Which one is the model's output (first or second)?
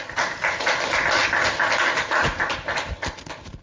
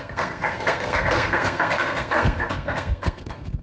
second